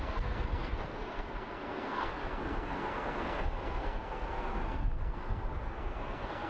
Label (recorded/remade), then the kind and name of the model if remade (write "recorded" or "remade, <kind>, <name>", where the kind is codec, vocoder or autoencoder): remade, codec, SNAC